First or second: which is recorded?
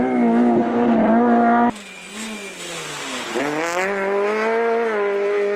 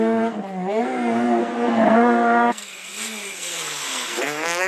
first